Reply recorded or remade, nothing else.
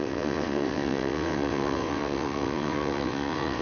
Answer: remade